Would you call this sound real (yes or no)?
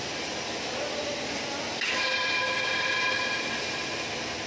yes